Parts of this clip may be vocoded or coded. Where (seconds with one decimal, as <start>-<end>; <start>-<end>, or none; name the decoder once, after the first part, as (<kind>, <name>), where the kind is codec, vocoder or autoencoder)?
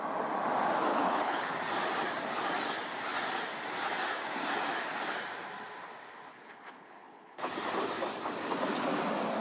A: 0.9-1.5 (codec, HILCodec); 6.3-7.5